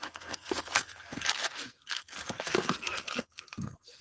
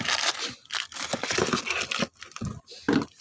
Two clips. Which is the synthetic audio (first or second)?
first